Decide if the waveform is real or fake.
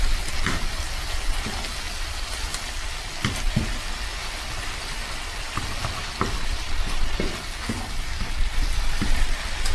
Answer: real